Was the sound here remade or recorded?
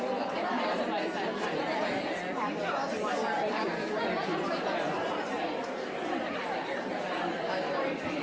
remade